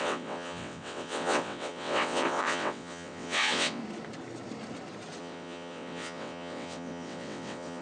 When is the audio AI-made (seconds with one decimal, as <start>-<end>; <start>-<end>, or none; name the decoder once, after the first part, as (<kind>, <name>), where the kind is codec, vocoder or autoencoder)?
0.0-3.8 (vocoder, WaveNeXt); 5.2-7.8